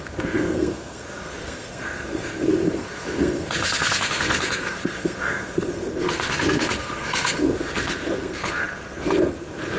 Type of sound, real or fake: fake